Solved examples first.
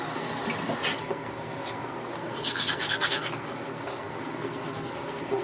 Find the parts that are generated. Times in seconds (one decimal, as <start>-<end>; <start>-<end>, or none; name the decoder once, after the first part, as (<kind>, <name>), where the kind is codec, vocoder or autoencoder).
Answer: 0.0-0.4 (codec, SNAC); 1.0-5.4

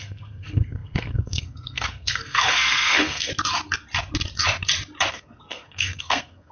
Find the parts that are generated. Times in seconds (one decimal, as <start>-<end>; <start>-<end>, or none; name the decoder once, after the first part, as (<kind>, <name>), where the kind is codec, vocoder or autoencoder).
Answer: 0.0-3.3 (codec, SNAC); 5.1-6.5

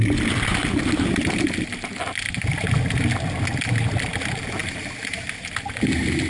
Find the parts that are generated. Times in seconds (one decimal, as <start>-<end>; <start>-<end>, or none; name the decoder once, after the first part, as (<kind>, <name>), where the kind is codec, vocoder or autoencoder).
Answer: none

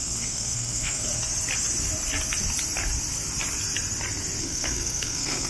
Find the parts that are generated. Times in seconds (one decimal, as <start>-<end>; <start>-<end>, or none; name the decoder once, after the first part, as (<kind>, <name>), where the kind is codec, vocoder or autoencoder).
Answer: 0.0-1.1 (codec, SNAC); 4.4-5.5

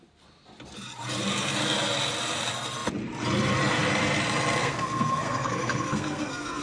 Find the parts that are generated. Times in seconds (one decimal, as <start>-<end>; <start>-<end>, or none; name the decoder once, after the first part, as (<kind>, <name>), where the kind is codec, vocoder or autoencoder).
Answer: 4.6-6.6 (codec, SNAC)

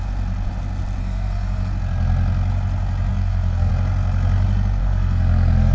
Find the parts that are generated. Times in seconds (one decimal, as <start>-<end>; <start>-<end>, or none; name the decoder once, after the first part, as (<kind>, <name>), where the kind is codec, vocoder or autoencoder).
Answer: 1.0-1.7 (codec, SNAC); 3.1-3.7; 4.8-5.7

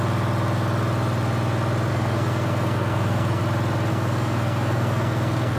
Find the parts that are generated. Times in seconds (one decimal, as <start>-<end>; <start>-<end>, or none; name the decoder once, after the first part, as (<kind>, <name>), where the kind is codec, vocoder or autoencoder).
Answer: 1.9-3.4 (codec, SNAC); 3.9-5.6